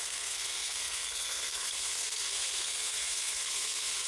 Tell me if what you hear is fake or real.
fake